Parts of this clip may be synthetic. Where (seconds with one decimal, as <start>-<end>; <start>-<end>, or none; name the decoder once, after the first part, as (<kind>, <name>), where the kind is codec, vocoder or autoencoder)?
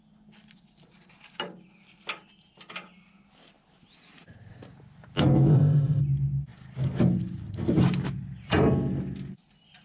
5.5-6.0 (codec, ZipCodec)